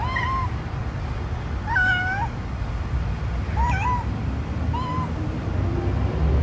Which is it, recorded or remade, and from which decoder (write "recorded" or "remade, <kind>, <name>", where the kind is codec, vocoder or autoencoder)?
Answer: recorded